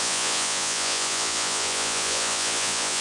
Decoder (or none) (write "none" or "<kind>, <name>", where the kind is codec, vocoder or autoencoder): vocoder, Vocos